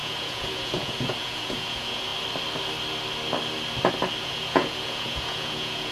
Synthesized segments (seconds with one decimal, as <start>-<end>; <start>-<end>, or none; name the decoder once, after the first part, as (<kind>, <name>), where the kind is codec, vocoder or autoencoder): 0.0-2.1 (vocoder, Vocos); 4.2-5.9

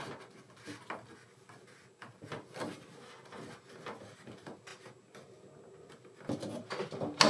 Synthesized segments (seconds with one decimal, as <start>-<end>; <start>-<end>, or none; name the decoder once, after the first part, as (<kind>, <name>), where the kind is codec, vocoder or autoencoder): none

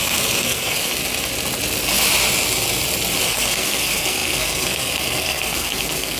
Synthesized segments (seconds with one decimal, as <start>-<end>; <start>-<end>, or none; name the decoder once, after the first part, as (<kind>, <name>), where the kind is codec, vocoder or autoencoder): 0.0-0.9 (codec, SNAC); 3.2-6.2